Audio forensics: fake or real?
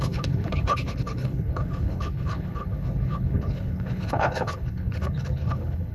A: fake